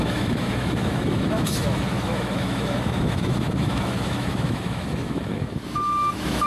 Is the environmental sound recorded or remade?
remade